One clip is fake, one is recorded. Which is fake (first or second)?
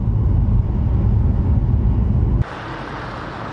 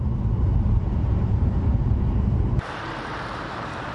second